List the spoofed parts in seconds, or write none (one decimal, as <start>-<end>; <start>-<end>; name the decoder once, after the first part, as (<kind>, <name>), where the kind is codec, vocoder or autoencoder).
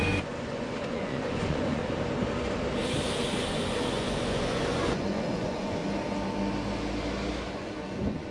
0.0-1.8 (vocoder, Vocos); 3.5-5.8; 7.5-8.3